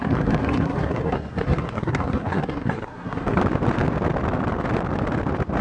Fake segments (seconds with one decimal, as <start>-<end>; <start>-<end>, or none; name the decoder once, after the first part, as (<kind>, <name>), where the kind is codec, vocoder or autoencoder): 0.0-3.4 (codec, SNAC)